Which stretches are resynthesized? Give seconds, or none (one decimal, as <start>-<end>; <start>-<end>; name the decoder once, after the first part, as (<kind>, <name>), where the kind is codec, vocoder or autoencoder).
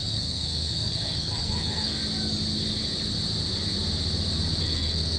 0.0-2.0 (codec, SNAC); 4.6-5.2